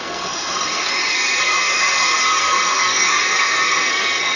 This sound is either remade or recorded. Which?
remade